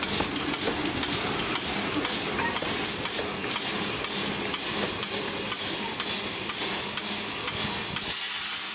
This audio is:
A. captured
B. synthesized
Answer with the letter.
A